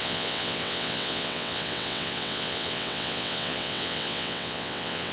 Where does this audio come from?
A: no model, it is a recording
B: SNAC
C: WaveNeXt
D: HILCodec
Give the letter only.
C